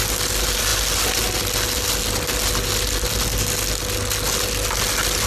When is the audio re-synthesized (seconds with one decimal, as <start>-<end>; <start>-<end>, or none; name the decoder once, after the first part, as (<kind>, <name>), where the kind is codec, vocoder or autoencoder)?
none